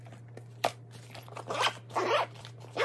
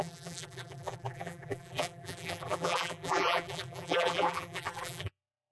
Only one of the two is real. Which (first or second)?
first